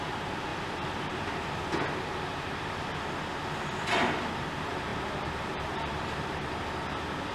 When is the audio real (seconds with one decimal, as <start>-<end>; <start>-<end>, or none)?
0.0-0.5; 1.6-4.9; 6.6-7.3